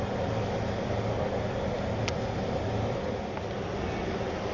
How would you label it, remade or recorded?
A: recorded